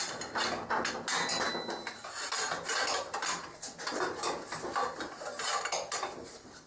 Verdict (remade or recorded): recorded